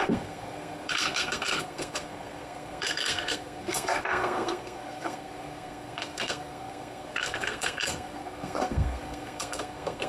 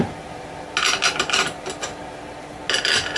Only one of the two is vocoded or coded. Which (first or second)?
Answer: first